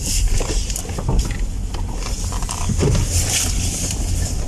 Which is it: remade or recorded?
recorded